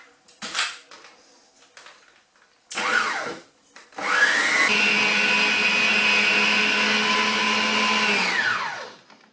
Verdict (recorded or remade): recorded